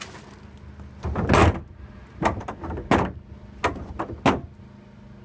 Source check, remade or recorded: recorded